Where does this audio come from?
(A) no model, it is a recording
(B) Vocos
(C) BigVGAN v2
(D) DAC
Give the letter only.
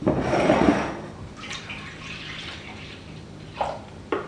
C